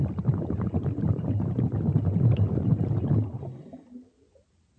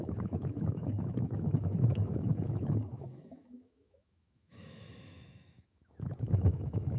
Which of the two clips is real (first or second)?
first